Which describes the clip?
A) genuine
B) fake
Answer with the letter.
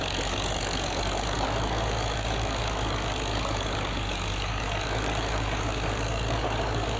B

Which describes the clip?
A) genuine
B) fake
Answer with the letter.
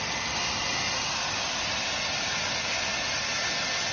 A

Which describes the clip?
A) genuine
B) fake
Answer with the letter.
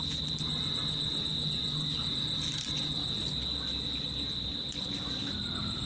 A